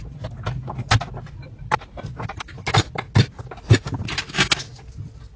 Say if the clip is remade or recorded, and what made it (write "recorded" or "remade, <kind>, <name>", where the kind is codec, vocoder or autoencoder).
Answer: recorded